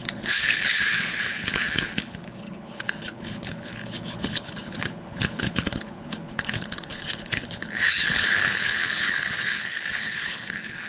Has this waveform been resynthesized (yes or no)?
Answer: yes